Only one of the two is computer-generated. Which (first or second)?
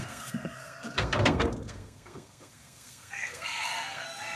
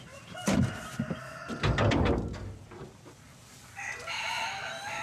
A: first